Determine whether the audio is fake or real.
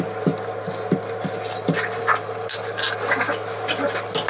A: real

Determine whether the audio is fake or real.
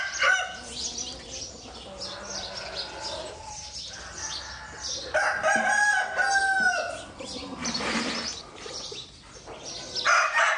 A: real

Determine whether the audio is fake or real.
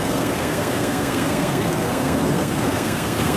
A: fake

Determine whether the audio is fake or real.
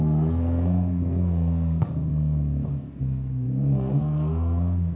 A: fake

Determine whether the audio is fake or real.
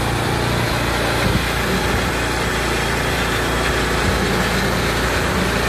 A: real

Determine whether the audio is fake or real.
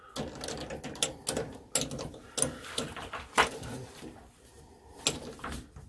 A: real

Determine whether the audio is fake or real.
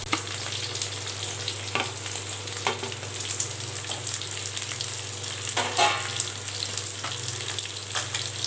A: real